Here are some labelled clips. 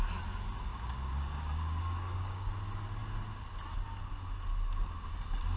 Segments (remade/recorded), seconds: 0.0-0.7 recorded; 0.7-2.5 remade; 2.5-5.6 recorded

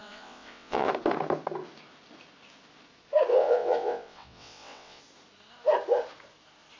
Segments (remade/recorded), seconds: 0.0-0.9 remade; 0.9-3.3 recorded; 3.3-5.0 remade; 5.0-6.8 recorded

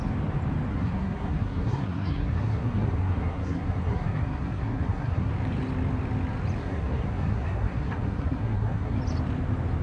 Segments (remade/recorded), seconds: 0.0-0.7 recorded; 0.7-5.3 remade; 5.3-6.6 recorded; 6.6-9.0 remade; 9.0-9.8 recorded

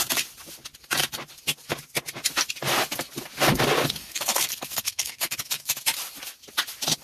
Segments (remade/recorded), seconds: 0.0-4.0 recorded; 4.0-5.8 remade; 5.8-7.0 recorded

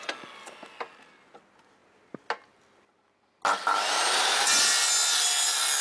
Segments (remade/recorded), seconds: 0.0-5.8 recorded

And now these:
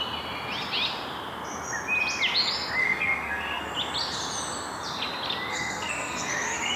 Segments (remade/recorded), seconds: 0.0-2.8 recorded; 2.8-3.7 remade; 3.7-5.5 recorded; 5.5-6.8 remade

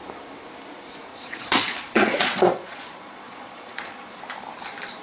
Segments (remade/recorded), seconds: 0.0-1.1 recorded; 1.1-4.1 remade; 4.1-5.0 recorded